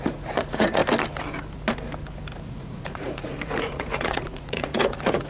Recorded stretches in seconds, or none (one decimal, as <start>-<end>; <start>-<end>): 0.8-2.4